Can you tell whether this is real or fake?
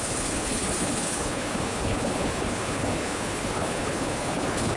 fake